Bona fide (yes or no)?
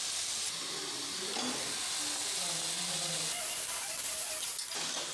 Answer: yes